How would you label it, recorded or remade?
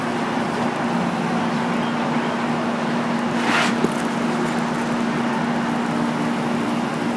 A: recorded